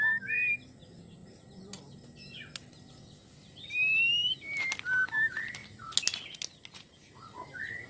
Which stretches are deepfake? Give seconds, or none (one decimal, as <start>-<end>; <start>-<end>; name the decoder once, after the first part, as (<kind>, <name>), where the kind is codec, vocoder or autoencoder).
none